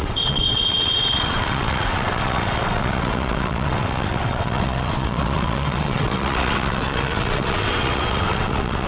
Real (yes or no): no